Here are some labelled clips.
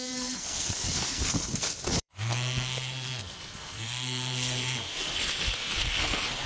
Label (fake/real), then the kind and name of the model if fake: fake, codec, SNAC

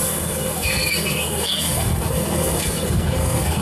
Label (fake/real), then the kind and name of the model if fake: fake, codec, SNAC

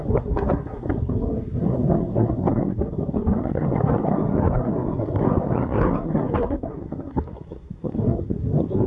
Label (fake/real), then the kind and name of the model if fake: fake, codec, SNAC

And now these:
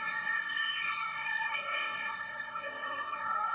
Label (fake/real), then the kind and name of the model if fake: fake, codec, SNAC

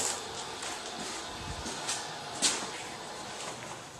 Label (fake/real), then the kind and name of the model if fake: real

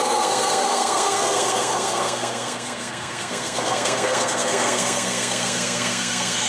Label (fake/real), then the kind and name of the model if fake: fake, codec, SNAC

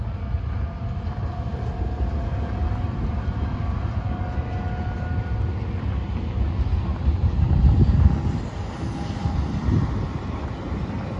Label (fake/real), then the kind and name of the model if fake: real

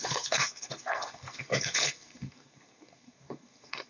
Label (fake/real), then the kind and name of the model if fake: fake, codec, SNAC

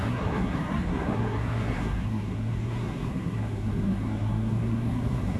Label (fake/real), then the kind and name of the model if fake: fake, codec, SNAC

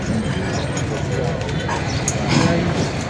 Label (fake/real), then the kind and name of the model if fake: real